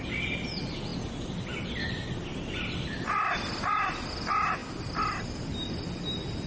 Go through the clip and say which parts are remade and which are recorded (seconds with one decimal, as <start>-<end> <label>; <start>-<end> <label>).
0.0-6.5 recorded